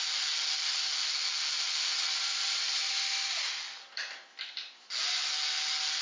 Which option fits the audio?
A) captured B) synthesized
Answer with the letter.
A